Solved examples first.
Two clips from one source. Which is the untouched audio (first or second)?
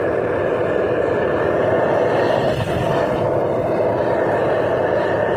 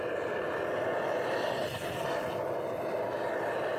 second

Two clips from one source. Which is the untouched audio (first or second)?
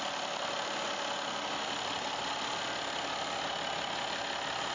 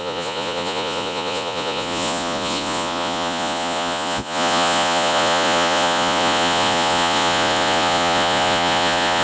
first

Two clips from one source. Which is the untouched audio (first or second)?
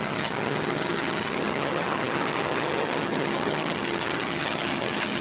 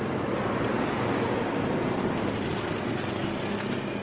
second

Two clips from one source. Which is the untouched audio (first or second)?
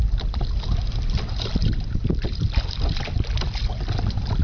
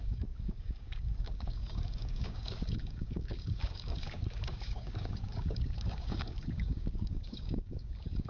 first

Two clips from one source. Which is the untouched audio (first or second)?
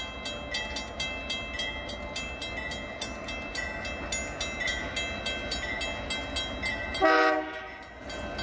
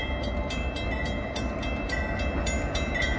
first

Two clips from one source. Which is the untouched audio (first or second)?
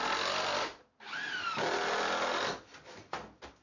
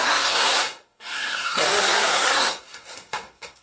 first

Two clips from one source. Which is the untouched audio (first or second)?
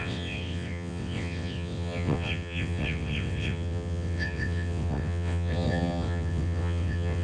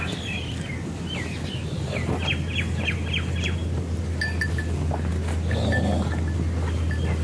second